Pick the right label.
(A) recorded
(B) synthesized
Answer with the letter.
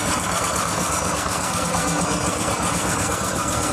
B